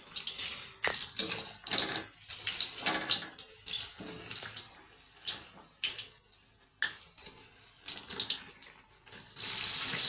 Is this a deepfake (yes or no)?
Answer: no